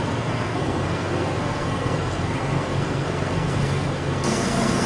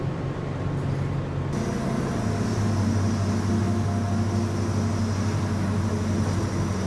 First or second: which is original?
second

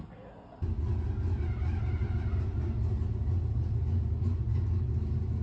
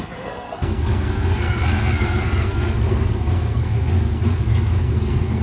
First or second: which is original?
first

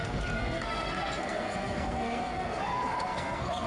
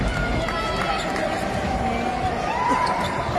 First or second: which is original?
second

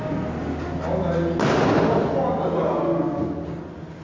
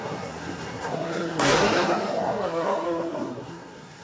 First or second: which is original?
first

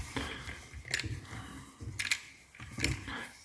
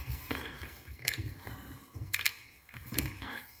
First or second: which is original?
first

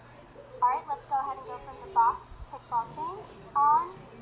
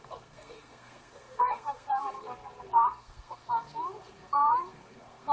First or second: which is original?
first